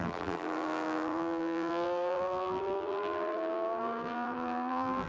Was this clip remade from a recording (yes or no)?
yes